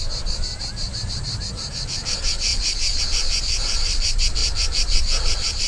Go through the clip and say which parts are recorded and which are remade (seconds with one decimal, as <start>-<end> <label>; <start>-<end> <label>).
0.0-5.7 recorded